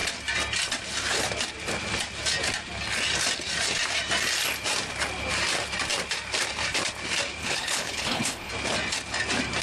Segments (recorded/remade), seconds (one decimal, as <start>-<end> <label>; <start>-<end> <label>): 0.0-7.4 recorded; 7.4-8.5 remade; 8.5-9.6 recorded